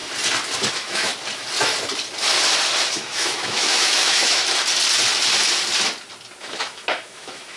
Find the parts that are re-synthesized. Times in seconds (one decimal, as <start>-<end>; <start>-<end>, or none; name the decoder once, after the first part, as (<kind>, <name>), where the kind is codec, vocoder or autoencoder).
0.7-1.1 (autoencoder, DAC-VAE); 2.9-4.4; 6.4-7.6